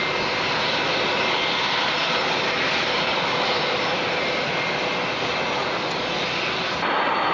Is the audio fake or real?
real